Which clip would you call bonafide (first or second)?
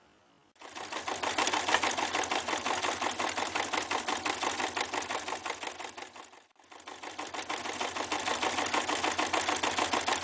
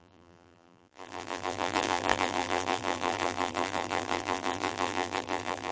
first